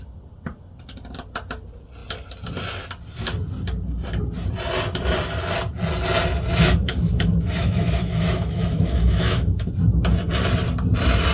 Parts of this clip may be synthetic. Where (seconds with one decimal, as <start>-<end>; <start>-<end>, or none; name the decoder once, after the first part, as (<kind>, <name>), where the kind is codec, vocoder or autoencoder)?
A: 6.5-9.7 (autoencoder, DAC-VAE)